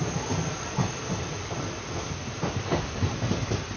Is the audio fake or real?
real